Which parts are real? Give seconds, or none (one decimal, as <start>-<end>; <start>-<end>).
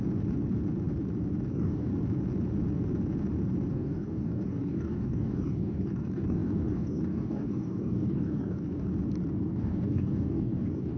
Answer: 0.0-1.5; 1.9-3.7; 8.9-9.4